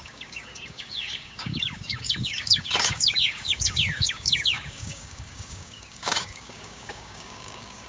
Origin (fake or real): fake